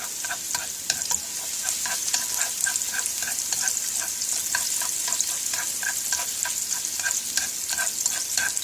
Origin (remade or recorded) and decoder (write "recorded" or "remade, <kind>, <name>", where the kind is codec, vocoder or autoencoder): recorded